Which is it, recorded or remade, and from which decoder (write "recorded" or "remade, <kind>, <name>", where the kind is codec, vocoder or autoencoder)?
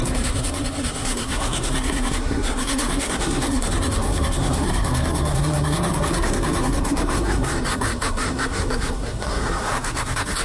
remade, codec, SNAC